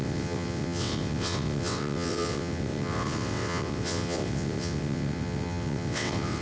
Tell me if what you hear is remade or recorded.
remade